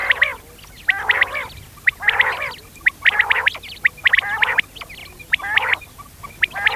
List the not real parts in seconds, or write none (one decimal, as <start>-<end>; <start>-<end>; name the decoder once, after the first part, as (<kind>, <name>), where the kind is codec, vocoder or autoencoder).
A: none